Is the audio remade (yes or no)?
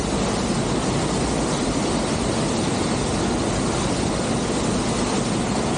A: no